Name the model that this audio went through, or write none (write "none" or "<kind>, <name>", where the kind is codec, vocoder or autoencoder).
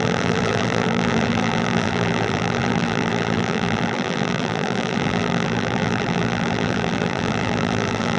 vocoder, BigVGAN v2